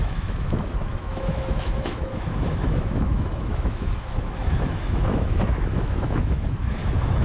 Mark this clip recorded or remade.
remade